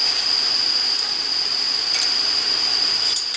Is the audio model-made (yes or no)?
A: yes